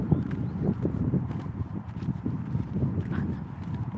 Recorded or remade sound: remade